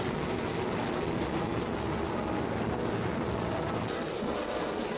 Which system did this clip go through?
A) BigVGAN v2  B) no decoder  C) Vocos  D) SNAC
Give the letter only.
B